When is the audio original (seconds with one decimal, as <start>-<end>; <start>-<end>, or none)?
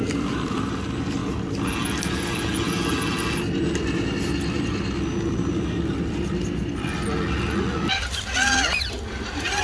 0.0-9.6